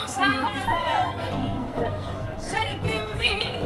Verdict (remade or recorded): remade